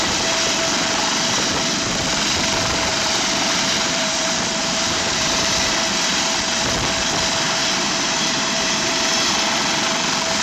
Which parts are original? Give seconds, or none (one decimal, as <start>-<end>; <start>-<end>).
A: 0.0-2.9; 5.5-7.6; 9.1-10.4